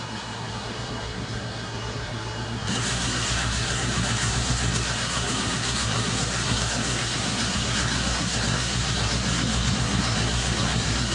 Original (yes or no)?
no